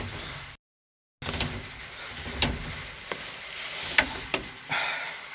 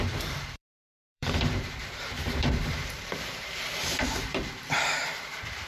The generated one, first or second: second